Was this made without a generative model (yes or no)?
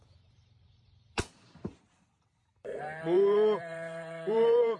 no